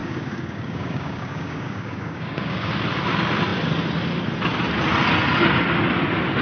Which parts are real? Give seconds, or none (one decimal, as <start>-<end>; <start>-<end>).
2.7-6.4